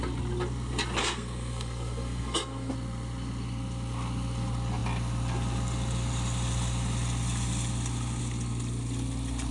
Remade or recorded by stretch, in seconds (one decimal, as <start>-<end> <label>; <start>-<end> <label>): 0.0-1.0 recorded; 1.0-2.7 remade; 2.7-9.5 recorded